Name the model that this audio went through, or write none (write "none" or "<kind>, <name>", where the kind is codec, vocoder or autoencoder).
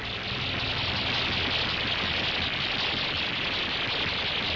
none